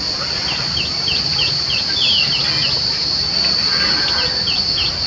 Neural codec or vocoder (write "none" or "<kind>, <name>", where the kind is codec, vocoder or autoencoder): none